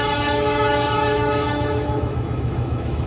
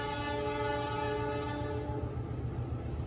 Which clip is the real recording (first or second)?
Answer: second